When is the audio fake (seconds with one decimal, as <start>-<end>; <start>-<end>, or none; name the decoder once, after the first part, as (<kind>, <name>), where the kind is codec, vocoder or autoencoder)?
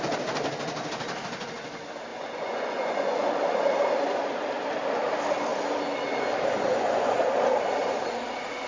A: 2.1-3.3 (vocoder, Vocos); 6.7-7.2